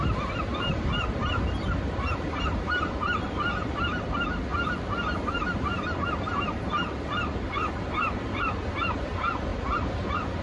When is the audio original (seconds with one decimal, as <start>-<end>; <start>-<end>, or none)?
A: 4.5-6.1